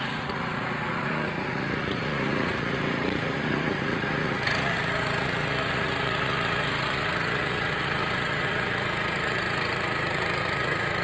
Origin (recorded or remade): remade